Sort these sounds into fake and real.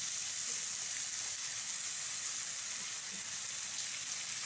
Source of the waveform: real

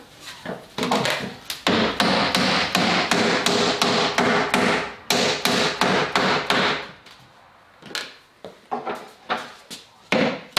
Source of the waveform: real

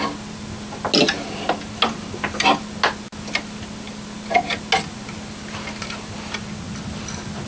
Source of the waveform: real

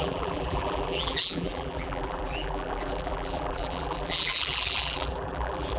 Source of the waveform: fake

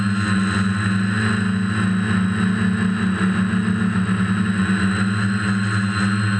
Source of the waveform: real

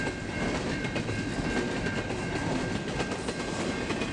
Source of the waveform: real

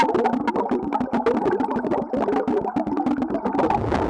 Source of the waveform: real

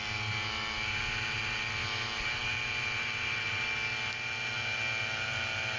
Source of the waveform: real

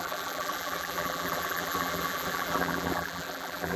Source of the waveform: fake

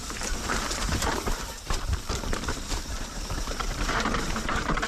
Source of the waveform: fake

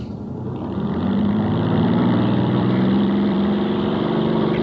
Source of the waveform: fake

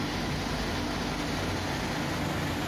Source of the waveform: real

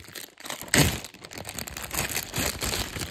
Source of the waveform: real